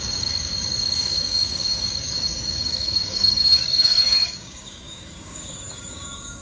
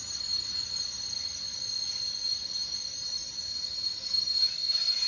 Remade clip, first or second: first